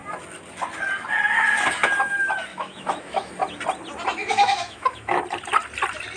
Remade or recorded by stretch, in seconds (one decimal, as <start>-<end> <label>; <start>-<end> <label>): 0.0-2.5 recorded; 2.5-3.3 remade; 3.3-4.2 recorded; 4.2-5.2 remade; 5.2-6.2 recorded